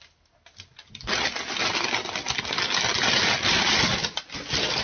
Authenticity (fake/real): real